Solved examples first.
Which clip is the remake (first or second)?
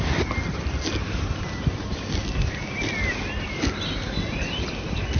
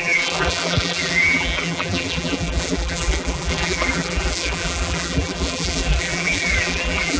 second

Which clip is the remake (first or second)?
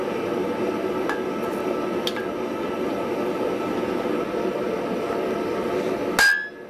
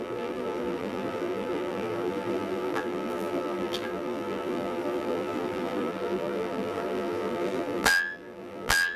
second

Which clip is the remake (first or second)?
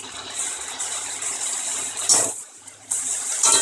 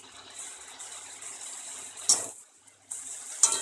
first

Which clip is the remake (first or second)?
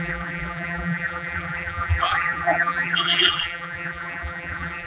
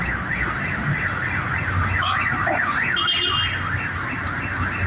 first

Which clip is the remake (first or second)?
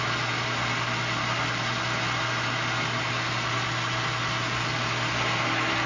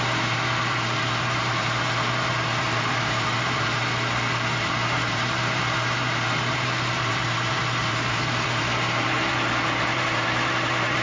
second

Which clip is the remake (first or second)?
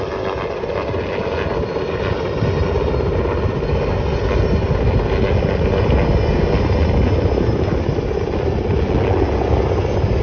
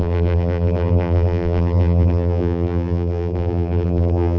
second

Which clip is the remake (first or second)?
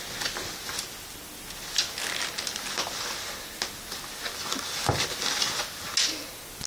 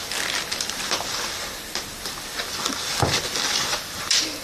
second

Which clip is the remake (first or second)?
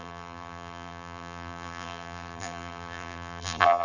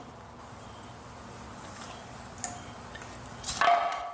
first